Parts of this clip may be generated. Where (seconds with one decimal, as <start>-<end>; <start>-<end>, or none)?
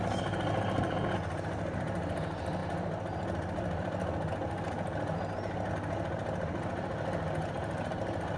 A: none